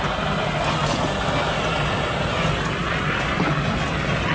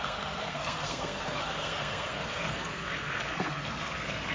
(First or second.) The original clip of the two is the first